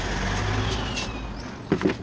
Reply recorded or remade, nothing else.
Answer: recorded